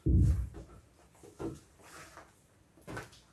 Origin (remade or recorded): recorded